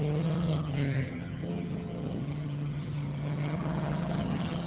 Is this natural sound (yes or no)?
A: no